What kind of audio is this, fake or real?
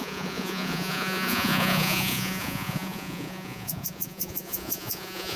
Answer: fake